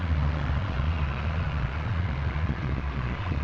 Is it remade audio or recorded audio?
remade